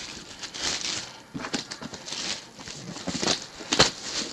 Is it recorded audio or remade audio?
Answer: recorded